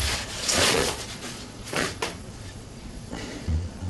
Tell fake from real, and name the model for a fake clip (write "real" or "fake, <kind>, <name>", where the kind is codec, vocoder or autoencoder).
fake, vocoder, Vocos